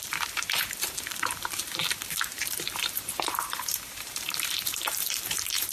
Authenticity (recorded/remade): remade